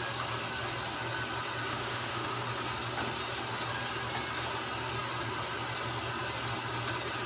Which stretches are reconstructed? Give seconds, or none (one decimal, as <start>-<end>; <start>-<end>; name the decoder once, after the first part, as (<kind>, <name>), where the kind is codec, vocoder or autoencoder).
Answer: 1.7-2.4 (autoencoder, DAC-VAE)